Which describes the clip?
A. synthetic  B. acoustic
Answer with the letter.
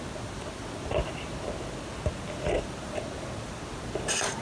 B